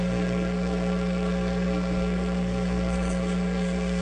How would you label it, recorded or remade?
remade